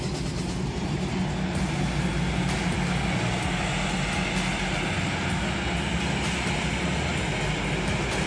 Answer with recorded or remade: recorded